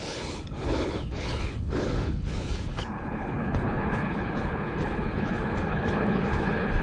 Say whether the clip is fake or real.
fake